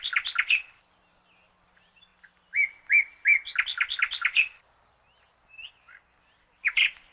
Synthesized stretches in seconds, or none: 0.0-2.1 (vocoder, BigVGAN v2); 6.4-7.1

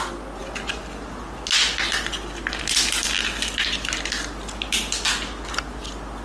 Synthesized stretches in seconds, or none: none

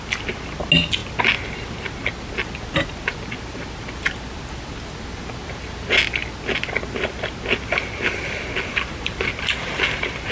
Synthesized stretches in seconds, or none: none

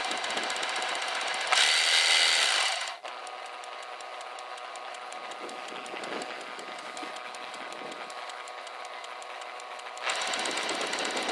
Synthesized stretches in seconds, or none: none

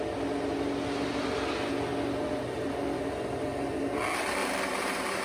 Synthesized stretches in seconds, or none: 4.4-5.2 (vocoder, BigVGAN v2)